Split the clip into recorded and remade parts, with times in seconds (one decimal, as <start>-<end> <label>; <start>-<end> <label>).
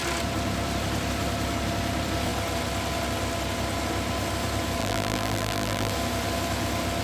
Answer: 0.0-4.8 recorded; 4.8-5.9 remade; 5.9-7.0 recorded